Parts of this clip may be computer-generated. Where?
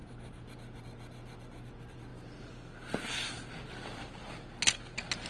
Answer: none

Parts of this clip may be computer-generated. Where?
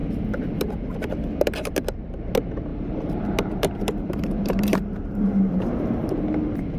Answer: 0.0-0.6 (vocoder, BigVGAN v2); 2.7-6.2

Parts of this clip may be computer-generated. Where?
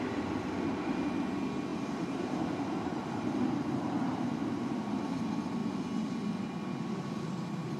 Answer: 1.7-2.4 (vocoder, BigVGAN v2); 3.0-4.3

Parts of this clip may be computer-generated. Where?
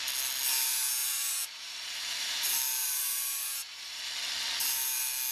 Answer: 1.0-4.0 (vocoder, BigVGAN v2)